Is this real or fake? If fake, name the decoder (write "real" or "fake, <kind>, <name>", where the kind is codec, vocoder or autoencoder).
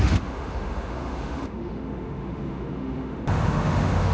fake, autoencoder, DAC-VAE